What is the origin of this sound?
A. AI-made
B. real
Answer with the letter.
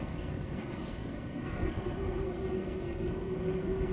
A